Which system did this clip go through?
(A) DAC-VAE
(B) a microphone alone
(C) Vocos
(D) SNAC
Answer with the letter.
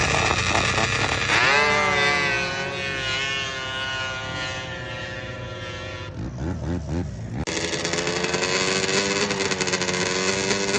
B